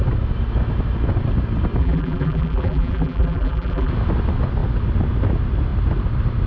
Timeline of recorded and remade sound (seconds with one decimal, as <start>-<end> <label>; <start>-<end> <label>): 0.0-1.8 recorded; 1.8-3.9 remade; 3.9-6.5 recorded